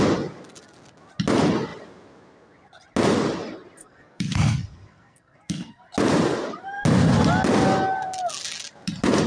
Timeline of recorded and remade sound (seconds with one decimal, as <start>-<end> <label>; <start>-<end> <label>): 0.0-3.8 recorded; 3.8-5.8 remade; 5.8-9.3 recorded

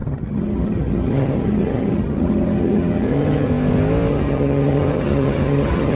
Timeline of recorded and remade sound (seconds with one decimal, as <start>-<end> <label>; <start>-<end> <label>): 0.0-3.5 remade; 3.5-4.1 recorded; 4.1-5.9 remade

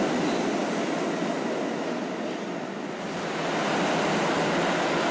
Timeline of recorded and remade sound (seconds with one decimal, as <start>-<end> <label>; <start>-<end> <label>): 0.0-5.1 recorded

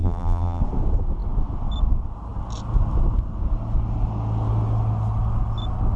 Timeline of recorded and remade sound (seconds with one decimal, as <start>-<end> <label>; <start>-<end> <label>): 0.0-0.6 remade; 0.6-6.0 recorded

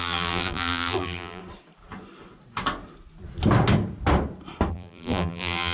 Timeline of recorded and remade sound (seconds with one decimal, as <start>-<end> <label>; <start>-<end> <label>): 0.0-1.4 remade; 1.4-4.7 recorded; 4.7-5.7 remade

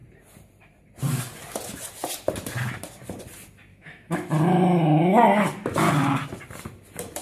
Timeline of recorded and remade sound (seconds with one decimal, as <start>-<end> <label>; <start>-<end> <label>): 0.0-3.7 recorded; 3.7-4.3 remade; 4.3-7.2 recorded